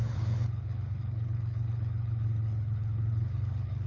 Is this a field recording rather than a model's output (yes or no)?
no